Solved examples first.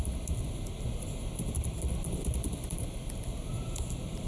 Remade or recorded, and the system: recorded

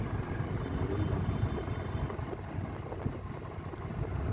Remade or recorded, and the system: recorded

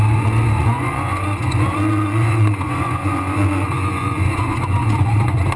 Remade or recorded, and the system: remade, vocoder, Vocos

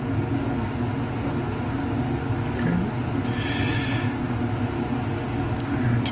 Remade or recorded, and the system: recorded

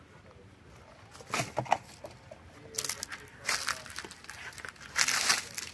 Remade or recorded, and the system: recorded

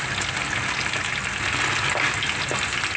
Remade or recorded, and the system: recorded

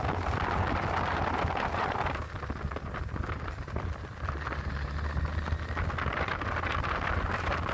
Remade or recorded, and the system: recorded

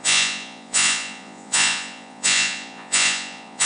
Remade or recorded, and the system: remade, vocoder, Vocos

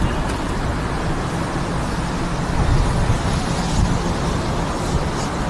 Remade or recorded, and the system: recorded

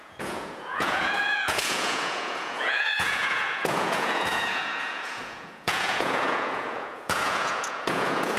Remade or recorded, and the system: remade, vocoder, Vocos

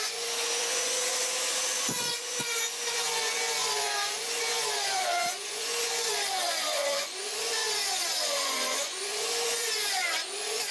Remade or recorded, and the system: remade, vocoder, Vocos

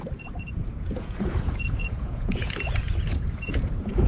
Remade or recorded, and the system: remade, vocoder, Vocos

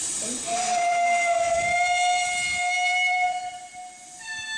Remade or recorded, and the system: recorded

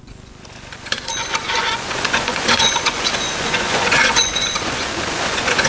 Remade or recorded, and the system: remade, vocoder, Vocos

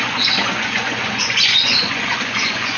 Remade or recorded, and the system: remade, vocoder, Vocos